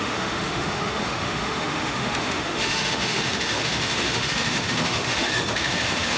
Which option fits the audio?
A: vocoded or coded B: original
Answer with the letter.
A